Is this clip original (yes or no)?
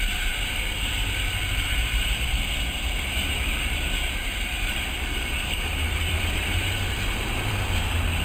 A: no